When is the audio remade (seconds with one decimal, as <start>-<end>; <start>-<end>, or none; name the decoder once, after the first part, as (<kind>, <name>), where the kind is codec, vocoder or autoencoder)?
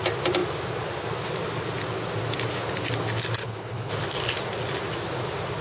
3.4-3.9 (codec, HILCodec)